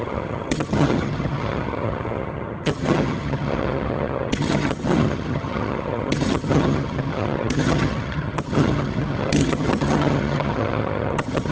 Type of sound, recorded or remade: remade